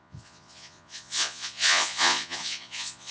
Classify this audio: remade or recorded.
remade